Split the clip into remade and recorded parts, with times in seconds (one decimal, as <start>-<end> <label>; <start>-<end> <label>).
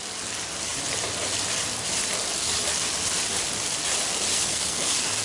0.0-4.3 recorded; 4.3-5.2 remade